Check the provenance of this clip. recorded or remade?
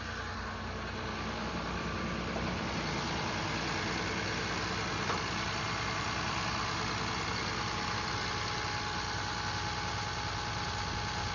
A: recorded